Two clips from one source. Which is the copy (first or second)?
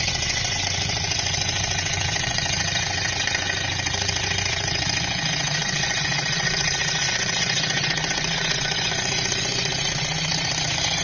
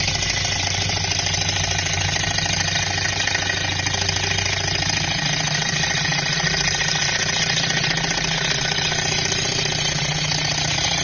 first